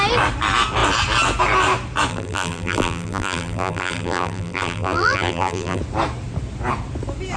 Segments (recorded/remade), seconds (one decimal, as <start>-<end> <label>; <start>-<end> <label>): 0.0-2.1 recorded; 2.1-5.8 remade; 5.8-7.4 recorded